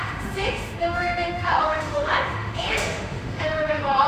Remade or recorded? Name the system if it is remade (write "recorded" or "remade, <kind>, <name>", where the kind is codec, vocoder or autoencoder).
remade, autoencoder, DAC-VAE